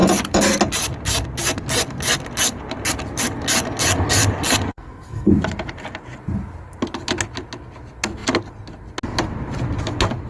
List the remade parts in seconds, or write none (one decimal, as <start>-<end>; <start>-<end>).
4.7-5.3